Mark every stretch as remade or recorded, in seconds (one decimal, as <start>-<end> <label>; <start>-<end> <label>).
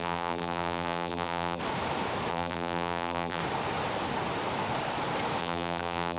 0.0-1.6 remade; 1.6-2.3 recorded; 2.3-3.4 remade; 3.4-5.4 recorded; 5.4-6.2 remade